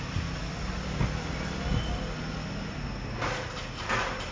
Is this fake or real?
real